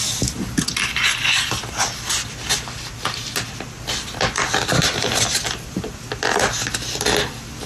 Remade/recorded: recorded